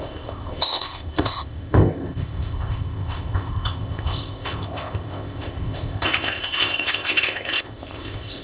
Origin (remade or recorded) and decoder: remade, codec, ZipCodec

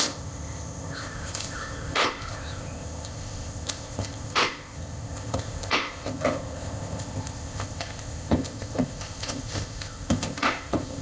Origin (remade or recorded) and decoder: remade, codec, ZipCodec